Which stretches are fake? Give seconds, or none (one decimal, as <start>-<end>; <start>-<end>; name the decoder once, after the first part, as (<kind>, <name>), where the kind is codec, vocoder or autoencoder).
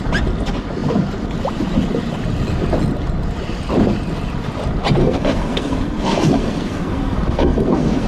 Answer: 5.0-8.1 (codec, SNAC)